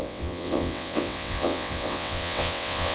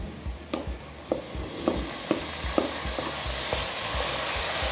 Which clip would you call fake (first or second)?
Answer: first